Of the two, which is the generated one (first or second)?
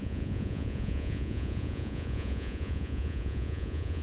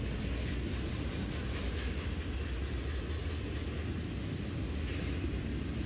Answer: first